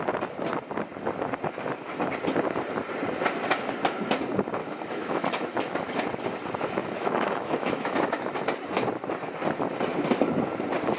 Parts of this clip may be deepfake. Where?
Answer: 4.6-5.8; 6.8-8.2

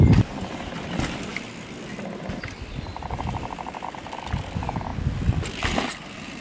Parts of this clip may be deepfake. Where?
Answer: none

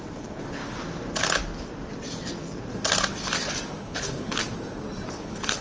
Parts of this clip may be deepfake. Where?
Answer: 0.0-0.6; 3.8-4.4; 5.1-5.6

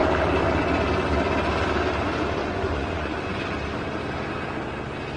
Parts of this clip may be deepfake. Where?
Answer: 2.4-3.4

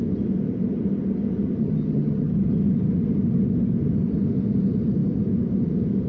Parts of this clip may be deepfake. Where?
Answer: 1.6-2.3

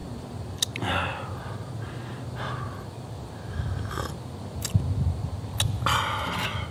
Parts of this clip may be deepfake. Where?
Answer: none

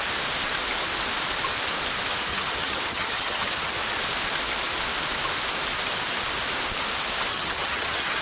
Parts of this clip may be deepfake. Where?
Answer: 2.3-3.7; 7.3-8.2

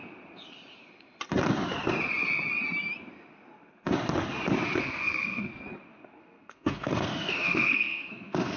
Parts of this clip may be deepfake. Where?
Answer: 4.8-5.5; 6.2-8.6